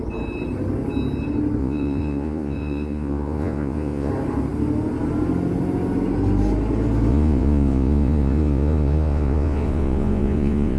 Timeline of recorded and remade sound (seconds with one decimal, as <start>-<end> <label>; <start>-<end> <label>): 0.0-1.6 recorded; 1.6-4.1 remade; 4.1-7.1 recorded; 7.1-10.8 remade